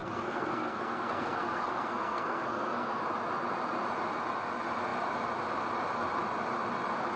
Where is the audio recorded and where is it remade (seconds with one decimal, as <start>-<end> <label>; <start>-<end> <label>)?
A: 0.0-3.0 remade; 3.0-7.2 recorded